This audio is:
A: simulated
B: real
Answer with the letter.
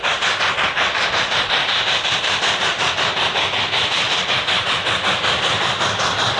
B